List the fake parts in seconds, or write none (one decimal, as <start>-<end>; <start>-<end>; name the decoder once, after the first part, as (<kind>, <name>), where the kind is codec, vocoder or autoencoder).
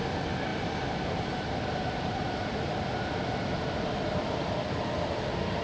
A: 0.5-2.6 (vocoder, BigVGAN v2)